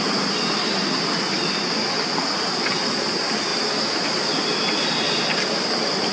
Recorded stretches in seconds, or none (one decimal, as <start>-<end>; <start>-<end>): 0.0-6.1